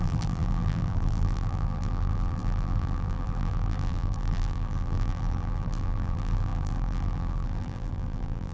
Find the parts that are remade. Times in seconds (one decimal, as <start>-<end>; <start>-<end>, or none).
0.0-8.5